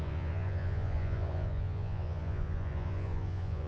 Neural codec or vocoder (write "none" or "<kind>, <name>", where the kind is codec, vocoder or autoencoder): vocoder, Vocos